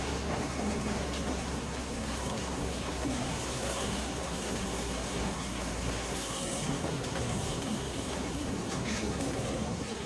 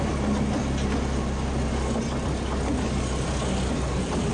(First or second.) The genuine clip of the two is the second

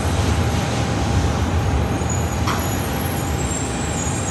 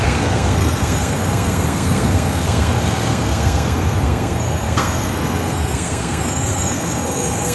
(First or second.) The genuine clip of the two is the first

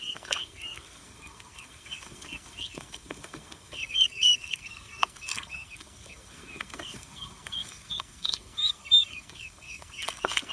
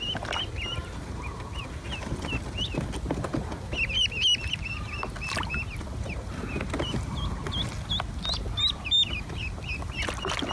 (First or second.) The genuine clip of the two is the second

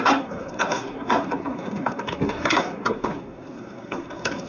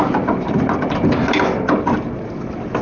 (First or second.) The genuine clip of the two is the second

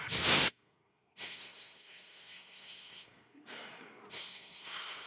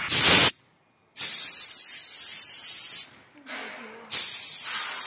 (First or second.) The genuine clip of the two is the second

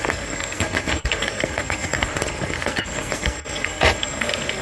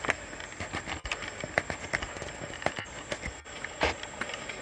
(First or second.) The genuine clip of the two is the second